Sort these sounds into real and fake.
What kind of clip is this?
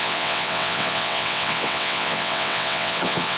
fake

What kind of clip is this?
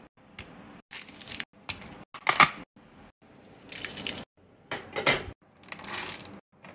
real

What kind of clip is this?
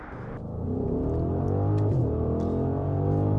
real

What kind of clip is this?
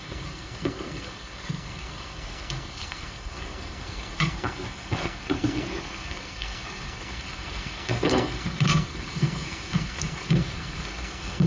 fake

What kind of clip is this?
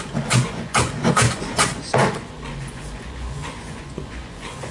fake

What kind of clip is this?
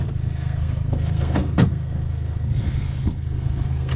fake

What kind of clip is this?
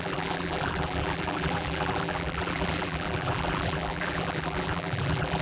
fake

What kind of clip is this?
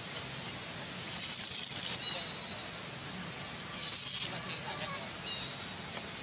real